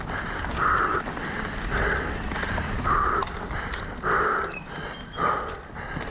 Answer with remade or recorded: recorded